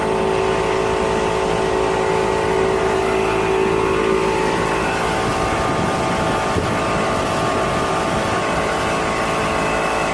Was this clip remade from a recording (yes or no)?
no